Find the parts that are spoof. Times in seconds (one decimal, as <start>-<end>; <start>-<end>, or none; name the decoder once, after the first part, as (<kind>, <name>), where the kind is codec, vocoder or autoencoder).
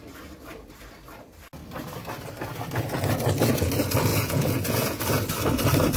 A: 4.1-5.0 (vocoder, Vocos)